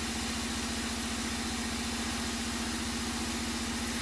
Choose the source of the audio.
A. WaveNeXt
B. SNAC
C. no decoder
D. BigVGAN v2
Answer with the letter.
C